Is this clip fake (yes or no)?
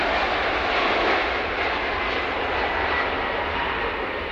no